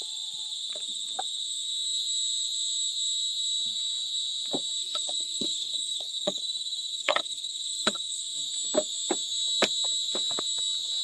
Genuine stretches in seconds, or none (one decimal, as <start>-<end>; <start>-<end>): 0.0-4.8; 6.4-6.9; 8.2-11.0